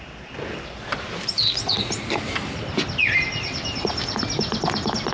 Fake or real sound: real